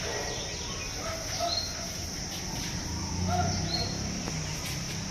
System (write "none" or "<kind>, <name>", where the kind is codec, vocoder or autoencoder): none